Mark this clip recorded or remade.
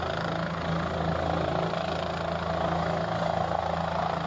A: recorded